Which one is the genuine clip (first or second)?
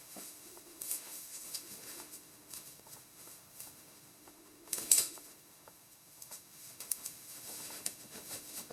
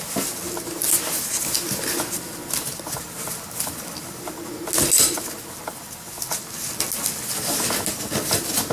second